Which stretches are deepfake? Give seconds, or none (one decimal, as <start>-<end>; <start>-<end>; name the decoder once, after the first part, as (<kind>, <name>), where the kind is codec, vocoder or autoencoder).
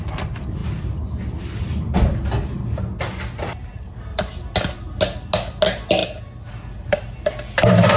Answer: 3.7-4.3 (vocoder, BigVGAN v2)